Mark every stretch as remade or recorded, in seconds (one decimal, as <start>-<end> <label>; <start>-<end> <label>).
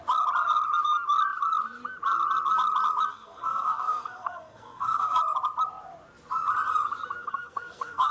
0.0-3.1 recorded; 3.1-5.2 remade; 5.2-7.2 recorded; 7.2-8.1 remade